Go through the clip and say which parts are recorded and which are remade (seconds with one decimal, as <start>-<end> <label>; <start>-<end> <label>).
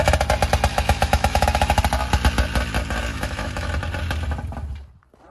0.0-0.7 recorded; 0.7-1.8 remade; 1.8-3.1 recorded; 3.1-3.7 remade; 3.7-5.3 recorded